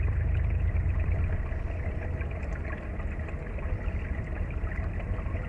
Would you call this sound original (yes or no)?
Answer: yes